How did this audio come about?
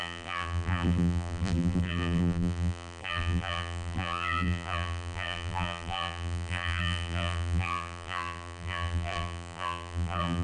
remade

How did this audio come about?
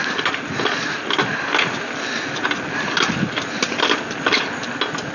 recorded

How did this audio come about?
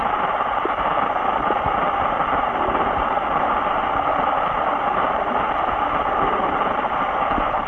recorded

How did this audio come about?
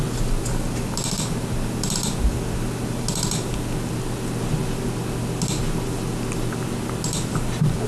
recorded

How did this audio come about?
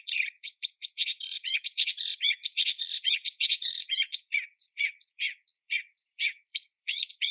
remade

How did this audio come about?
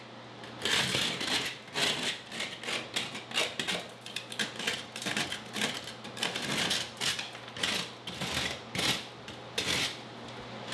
recorded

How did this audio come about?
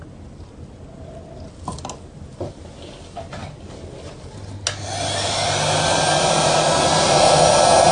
recorded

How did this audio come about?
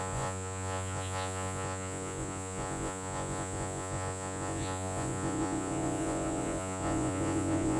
remade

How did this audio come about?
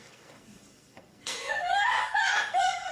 remade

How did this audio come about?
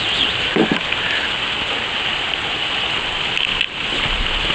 recorded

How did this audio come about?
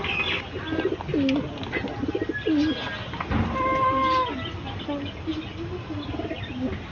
recorded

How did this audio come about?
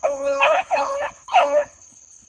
remade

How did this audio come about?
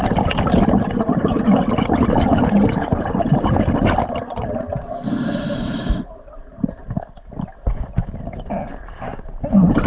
recorded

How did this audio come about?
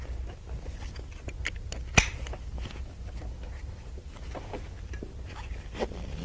recorded